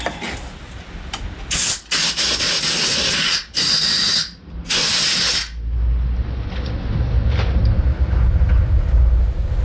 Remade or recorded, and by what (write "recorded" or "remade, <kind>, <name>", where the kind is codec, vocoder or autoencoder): recorded